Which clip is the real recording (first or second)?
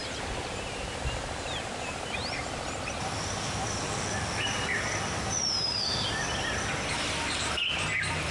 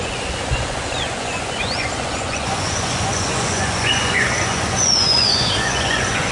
first